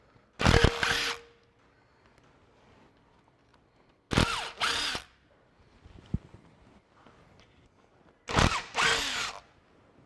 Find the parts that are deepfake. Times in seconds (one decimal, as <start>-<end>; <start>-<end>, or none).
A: none